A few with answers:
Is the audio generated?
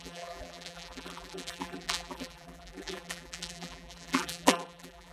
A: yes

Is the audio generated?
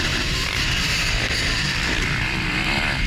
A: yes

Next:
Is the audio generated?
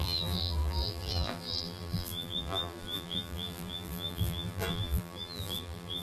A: yes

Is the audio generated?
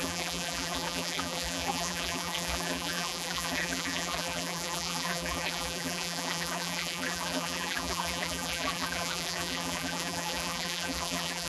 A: yes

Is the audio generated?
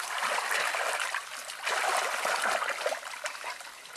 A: no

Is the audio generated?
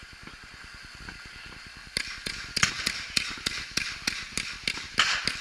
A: yes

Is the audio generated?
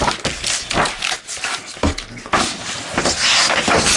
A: no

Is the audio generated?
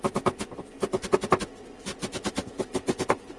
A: no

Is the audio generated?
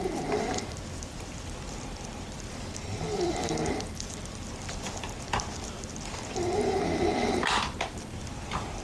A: yes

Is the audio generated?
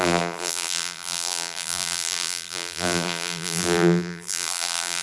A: yes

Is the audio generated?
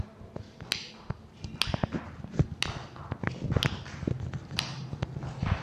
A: no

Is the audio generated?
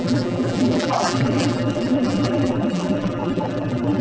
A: yes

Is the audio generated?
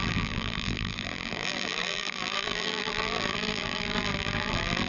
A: yes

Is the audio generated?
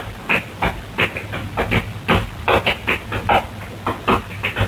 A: no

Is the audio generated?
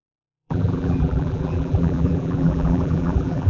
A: yes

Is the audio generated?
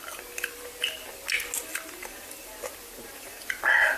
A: no